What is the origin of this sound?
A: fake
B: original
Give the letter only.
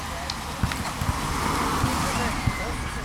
B